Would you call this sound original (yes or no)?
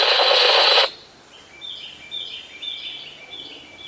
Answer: yes